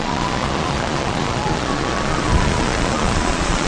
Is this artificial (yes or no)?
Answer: yes